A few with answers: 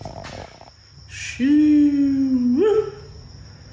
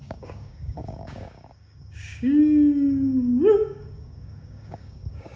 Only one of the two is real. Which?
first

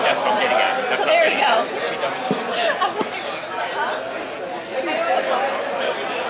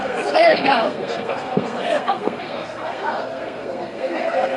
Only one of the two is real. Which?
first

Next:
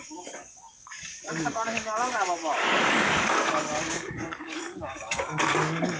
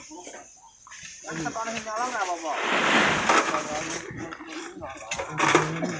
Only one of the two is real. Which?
second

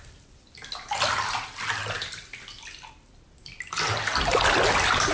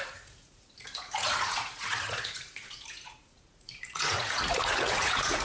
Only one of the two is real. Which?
first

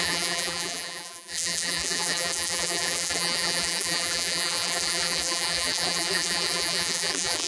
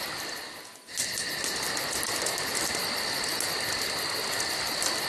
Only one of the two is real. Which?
second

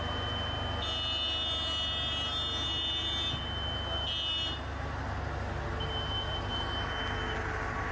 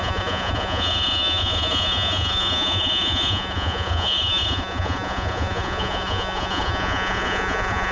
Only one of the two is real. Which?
first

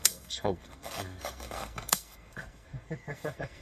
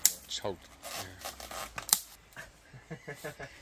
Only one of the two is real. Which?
second